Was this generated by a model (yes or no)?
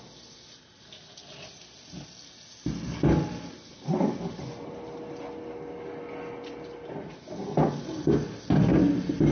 no